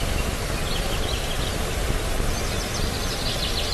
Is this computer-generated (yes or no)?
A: no